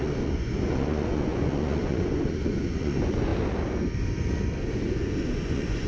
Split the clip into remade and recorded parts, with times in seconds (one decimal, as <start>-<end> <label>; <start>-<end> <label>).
0.0-3.3 remade; 3.3-4.6 recorded; 4.6-5.9 remade